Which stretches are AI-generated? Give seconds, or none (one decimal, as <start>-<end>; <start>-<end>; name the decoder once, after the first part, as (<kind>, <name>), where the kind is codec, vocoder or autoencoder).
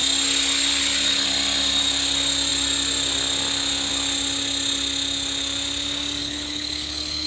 6.2-7.3 (codec, HILCodec)